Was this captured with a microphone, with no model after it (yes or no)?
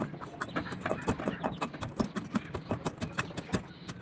yes